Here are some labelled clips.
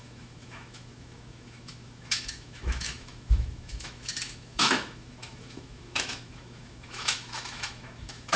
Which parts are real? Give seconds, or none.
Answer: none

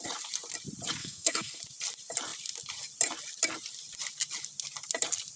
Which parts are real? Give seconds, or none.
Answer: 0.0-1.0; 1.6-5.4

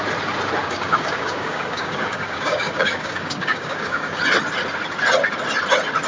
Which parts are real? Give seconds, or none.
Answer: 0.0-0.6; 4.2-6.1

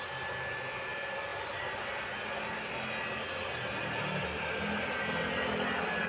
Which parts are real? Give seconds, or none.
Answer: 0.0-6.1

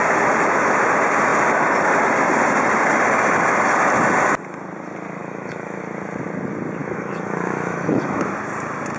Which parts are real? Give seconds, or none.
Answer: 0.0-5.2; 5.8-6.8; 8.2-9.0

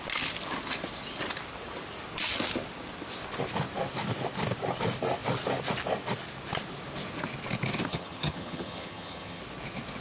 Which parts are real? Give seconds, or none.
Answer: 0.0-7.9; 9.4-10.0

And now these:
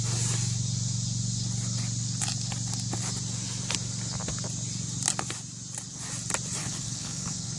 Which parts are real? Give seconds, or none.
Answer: 0.0-6.6